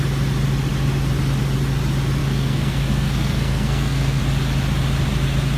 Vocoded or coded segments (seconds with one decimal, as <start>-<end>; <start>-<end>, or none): 2.2-4.2